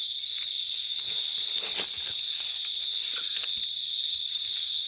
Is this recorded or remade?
recorded